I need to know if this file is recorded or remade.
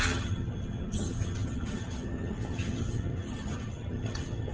remade